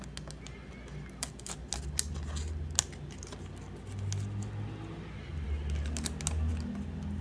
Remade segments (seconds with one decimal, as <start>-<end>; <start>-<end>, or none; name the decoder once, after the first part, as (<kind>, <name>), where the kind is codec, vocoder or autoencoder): none